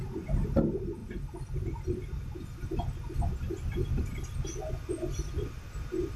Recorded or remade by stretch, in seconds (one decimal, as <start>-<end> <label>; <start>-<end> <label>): 0.0-6.2 recorded